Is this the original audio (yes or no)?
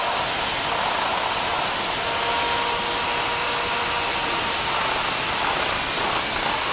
yes